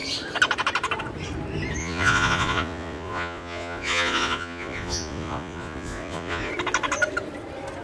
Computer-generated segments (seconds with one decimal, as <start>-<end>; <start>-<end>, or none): 1.8-6.5